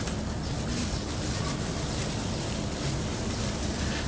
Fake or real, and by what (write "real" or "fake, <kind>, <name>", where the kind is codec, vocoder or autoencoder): real